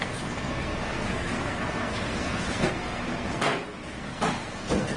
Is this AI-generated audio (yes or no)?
yes